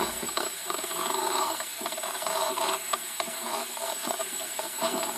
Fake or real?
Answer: fake